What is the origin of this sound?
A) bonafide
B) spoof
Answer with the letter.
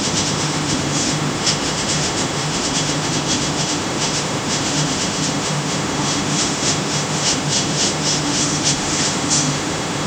B